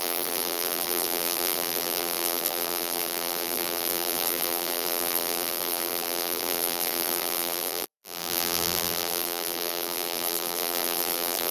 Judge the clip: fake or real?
fake